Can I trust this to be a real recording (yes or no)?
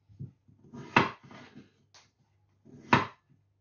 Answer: yes